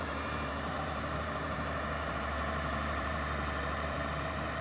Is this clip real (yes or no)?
no